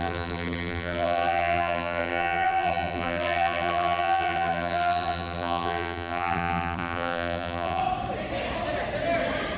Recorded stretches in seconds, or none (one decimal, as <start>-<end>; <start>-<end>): 7.8-9.6